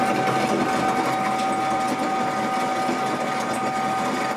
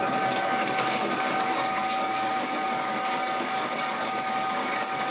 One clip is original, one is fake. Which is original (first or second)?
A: first